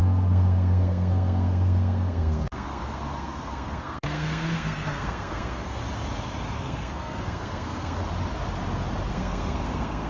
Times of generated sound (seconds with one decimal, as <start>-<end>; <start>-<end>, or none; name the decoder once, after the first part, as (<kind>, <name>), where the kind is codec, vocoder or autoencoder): 0.0-5.8 (codec, SNAC); 6.6-8.0; 9.1-10.1

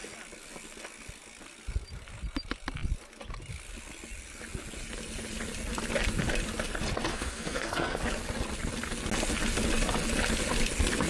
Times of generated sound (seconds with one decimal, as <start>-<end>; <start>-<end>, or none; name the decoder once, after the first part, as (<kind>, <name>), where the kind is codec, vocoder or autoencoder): 7.1-8.0 (codec, SNAC)

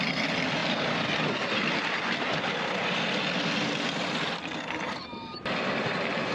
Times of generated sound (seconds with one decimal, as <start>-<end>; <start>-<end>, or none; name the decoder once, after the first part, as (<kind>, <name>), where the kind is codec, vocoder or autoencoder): none

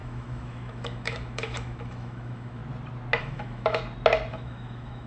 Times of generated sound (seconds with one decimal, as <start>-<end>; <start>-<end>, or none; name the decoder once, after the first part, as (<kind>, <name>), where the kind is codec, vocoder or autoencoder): 0.0-2.6 (autoencoder, DAC-VAE); 3.2-3.8; 4.3-5.1

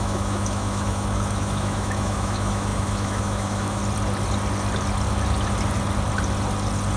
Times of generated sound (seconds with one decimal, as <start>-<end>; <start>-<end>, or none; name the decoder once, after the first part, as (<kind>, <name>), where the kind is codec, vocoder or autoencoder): 0.0-3.8 (autoencoder, DAC-VAE)

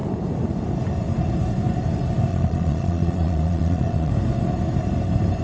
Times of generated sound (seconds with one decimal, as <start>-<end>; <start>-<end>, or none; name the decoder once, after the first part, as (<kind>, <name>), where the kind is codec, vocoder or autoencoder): 2.3-4.1 (vocoder, Vocos)